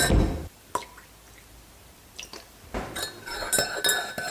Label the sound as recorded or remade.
recorded